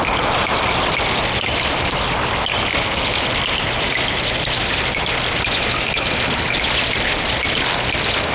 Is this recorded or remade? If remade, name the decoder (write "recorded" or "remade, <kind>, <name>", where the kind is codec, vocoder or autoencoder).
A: recorded